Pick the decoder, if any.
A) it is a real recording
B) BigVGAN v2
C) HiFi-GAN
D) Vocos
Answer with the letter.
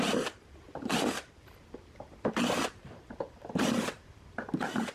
B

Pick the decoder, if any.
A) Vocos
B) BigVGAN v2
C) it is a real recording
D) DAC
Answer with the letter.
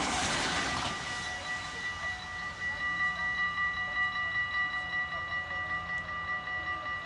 C